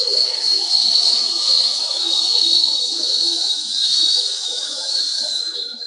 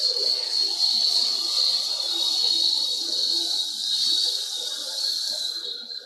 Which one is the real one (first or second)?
second